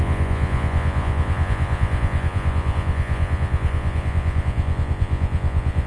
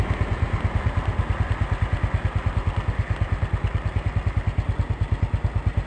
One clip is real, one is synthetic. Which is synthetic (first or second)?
first